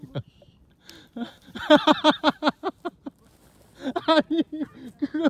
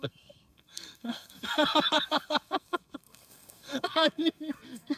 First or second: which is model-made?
second